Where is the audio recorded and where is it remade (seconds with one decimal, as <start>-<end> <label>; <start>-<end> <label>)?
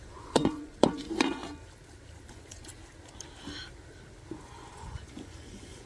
0.0-1.4 remade; 1.4-2.3 recorded; 2.3-2.7 remade; 2.7-4.3 recorded; 4.3-5.9 remade